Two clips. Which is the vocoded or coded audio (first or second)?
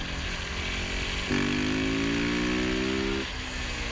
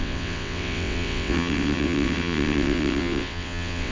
second